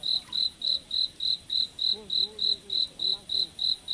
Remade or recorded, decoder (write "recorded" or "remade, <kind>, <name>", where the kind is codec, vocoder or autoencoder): recorded